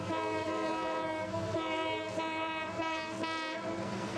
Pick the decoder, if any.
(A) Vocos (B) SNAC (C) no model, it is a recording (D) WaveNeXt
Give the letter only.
B